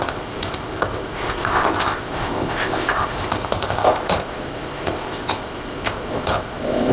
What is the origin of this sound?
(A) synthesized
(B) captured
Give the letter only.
A